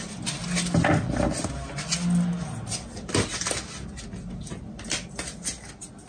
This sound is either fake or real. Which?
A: real